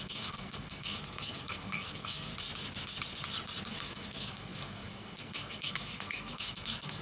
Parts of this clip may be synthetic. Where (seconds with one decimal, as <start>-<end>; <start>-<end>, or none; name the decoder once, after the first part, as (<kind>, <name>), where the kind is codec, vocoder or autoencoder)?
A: 0.0-2.3 (codec, SNAC); 3.8-7.0